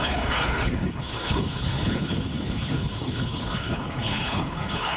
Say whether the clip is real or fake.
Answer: fake